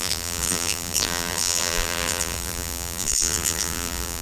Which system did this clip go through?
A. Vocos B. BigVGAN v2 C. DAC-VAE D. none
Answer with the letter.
B